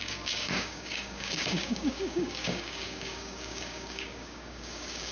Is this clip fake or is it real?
fake